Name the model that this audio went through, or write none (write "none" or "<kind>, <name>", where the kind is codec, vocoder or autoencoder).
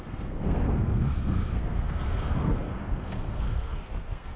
codec, SNAC